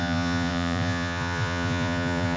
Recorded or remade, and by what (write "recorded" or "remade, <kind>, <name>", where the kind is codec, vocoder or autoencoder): remade, vocoder, Vocos